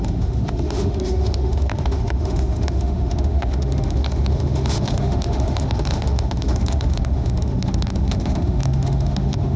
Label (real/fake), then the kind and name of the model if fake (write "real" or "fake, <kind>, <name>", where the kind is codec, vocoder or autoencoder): fake, autoencoder, DAC-VAE